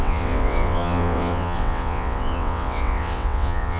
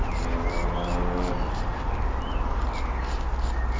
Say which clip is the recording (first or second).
second